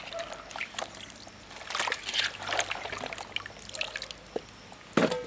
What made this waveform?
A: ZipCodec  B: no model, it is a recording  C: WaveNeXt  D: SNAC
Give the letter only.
B